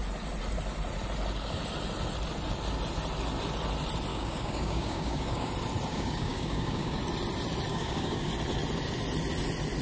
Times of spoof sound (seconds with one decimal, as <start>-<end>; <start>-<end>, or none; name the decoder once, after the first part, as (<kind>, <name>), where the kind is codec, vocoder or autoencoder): 4.1-5.5 (codec, DAC); 5.9-7.0; 7.7-8.3